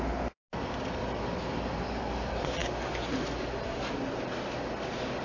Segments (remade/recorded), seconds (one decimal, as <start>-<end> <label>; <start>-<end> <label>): 0.0-5.2 recorded